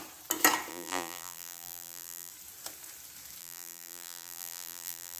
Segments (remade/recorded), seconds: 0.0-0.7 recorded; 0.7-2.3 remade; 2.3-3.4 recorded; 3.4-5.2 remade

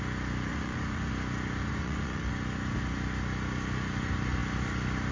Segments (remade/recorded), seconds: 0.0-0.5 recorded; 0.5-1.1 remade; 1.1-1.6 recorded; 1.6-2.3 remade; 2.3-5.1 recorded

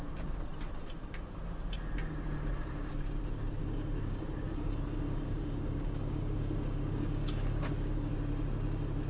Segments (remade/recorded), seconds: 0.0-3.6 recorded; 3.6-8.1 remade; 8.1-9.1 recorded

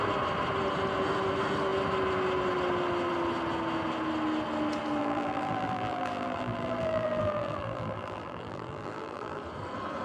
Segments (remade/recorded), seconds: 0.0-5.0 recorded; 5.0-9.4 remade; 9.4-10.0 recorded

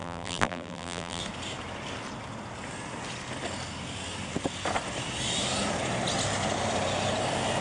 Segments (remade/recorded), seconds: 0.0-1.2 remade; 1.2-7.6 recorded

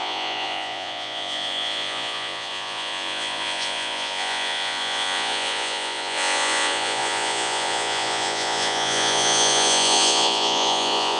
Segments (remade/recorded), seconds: 0.0-11.2 remade